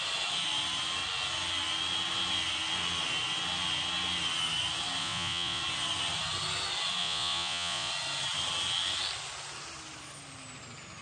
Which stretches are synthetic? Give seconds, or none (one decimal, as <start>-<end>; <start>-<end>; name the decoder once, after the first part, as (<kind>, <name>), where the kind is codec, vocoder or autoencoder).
5.0-5.6 (vocoder, Vocos); 7.0-7.9